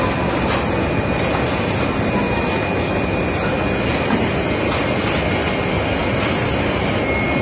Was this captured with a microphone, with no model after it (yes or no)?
yes